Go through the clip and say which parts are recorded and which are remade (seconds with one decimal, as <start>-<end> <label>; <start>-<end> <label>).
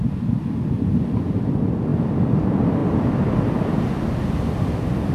0.0-5.1 recorded